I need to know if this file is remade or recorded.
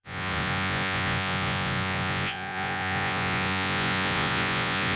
remade